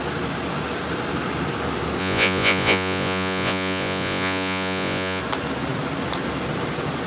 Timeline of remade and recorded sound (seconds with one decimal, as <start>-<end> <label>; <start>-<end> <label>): 0.0-2.0 recorded; 2.0-5.2 remade; 5.2-7.1 recorded